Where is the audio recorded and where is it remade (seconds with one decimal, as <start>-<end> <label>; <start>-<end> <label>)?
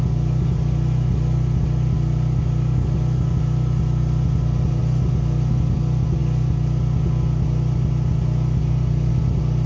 0.0-9.7 recorded